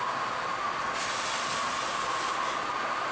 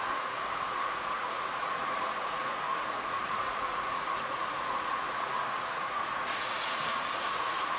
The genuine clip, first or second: first